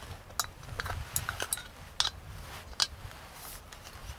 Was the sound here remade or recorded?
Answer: recorded